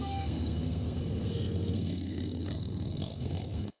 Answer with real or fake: fake